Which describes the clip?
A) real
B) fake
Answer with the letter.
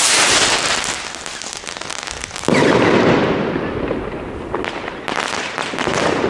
A